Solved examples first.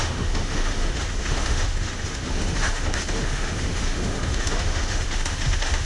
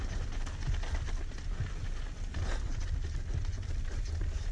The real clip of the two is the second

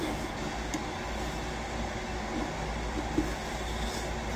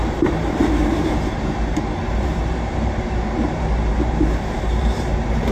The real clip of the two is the first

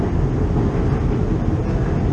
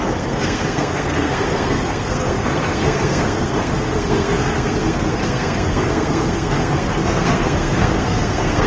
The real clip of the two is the first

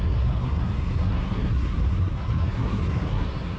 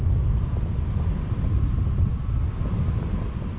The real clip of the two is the second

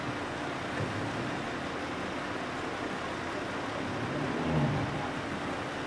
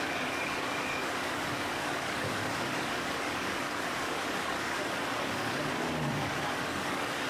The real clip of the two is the first